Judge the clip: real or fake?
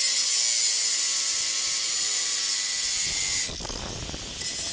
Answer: real